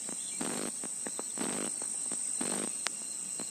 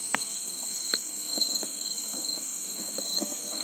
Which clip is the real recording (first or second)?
first